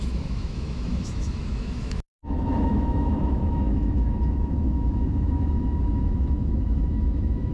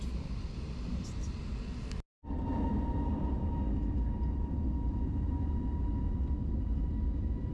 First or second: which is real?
second